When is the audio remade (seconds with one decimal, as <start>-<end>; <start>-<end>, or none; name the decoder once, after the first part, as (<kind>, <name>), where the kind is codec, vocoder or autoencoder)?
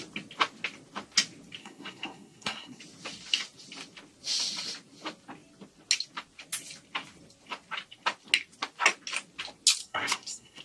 1.6-2.8 (codec, SNAC); 9.8-10.6